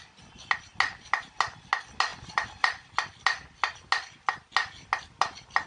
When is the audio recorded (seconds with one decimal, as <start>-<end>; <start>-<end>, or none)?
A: 0.0-2.1; 2.8-5.7